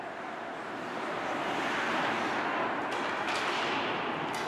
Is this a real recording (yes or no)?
yes